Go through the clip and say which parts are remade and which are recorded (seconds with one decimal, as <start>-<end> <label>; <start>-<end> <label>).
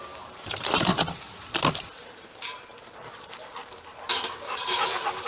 0.0-5.3 remade